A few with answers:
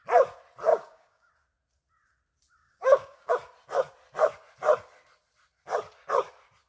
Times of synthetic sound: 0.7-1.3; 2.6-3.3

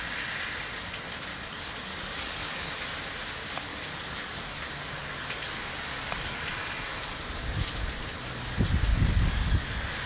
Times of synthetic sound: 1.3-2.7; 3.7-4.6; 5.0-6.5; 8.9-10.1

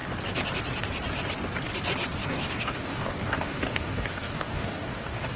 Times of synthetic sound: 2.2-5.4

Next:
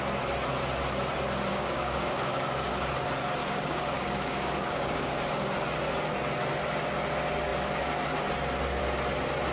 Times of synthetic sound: 1.5-2.7; 3.4-5.1